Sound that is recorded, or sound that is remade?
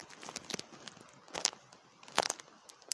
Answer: recorded